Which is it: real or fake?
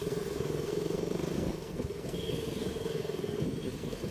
fake